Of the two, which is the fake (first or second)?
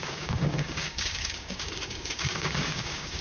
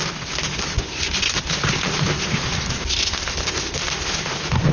first